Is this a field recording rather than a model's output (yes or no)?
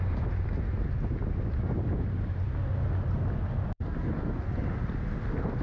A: yes